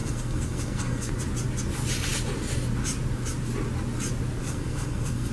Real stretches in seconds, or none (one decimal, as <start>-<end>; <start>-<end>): 1.1-4.4